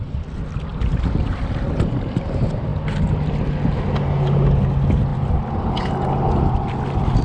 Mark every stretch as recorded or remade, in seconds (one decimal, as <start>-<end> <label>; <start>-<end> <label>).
0.0-0.7 recorded; 0.7-1.2 remade; 1.2-5.1 recorded; 5.1-5.7 remade; 5.7-7.2 recorded